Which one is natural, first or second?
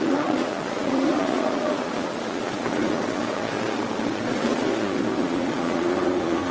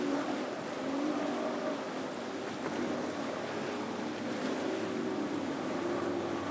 second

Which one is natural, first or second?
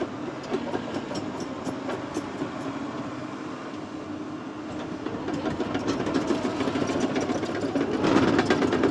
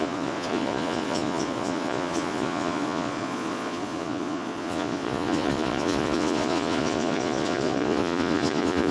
first